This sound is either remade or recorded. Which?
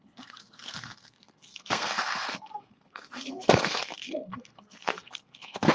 remade